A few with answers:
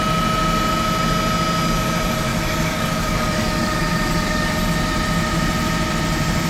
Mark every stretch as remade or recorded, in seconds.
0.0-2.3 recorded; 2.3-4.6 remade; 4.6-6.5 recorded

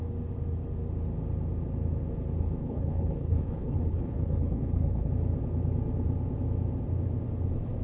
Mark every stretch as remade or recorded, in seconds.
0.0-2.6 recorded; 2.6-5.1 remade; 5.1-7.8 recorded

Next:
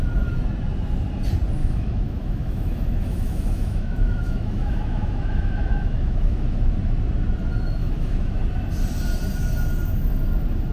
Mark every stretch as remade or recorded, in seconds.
0.0-1.6 recorded; 1.6-6.7 remade; 6.7-7.8 recorded; 7.8-8.4 remade; 8.4-10.7 recorded

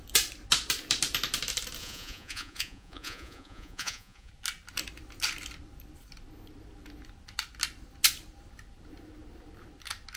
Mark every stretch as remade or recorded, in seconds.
0.0-1.8 recorded; 1.8-4.3 remade; 4.3-10.2 recorded

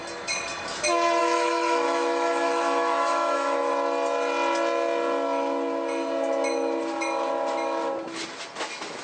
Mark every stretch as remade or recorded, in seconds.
0.0-1.2 recorded; 1.2-3.7 remade; 3.7-8.6 recorded; 8.6-9.0 remade

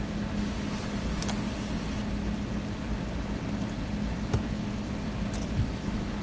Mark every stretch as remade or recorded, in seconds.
0.0-6.2 recorded

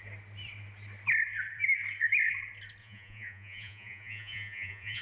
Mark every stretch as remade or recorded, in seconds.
0.0-2.8 recorded; 2.8-5.0 remade